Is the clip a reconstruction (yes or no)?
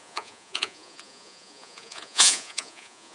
yes